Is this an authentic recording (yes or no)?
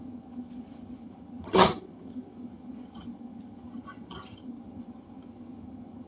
no